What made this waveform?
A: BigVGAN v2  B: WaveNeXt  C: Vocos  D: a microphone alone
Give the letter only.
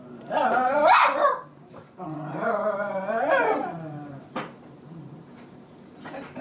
A